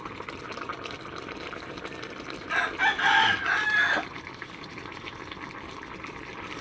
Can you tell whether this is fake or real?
real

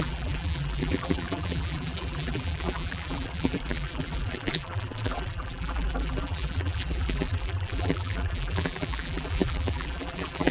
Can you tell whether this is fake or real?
fake